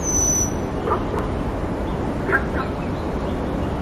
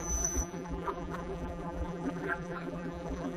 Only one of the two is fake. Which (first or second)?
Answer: second